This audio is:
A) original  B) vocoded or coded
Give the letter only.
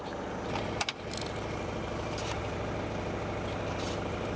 A